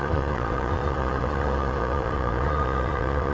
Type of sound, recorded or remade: remade